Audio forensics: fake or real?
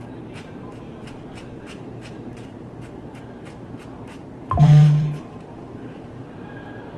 fake